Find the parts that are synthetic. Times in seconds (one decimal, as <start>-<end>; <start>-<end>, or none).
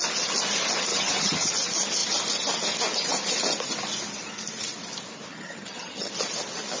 0.9-1.5; 5.3-6.1